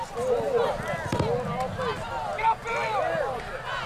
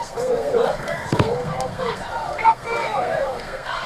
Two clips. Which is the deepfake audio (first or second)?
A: second